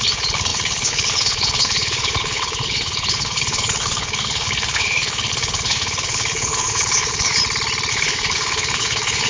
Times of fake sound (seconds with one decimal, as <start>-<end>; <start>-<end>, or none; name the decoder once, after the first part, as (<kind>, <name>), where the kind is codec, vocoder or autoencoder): 0.0-7.4 (codec, HILCodec); 7.9-9.3